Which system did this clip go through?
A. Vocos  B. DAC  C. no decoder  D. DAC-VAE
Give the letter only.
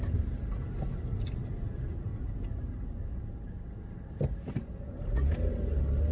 C